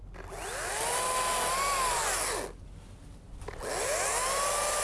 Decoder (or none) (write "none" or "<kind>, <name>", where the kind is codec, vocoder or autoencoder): none